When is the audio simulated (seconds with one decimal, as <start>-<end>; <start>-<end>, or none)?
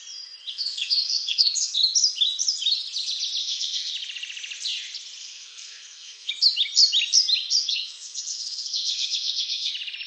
0.5-1.8; 3.4-3.9; 5.2-6.3; 7.6-9.7